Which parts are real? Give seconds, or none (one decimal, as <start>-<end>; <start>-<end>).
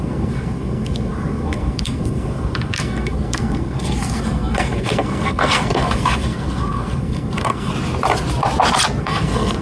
7.7-9.0